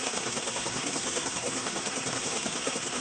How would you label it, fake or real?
fake